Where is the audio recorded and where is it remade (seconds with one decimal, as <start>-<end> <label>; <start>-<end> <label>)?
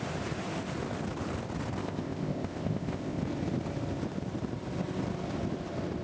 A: 0.0-1.8 recorded; 1.8-3.2 remade; 3.2-6.0 recorded